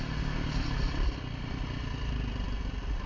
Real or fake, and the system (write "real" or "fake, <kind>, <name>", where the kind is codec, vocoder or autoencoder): real